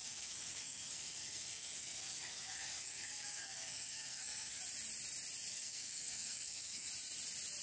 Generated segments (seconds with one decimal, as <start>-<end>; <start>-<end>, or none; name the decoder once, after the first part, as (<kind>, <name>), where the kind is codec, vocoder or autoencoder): 0.0-4.6 (codec, SNAC); 5.5-6.9